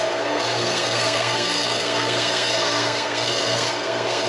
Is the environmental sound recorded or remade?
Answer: remade